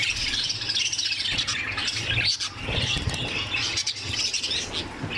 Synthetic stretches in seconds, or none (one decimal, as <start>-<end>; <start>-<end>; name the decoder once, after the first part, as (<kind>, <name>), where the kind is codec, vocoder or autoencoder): none